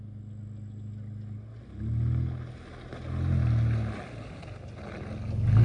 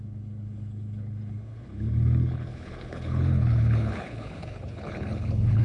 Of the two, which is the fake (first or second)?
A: second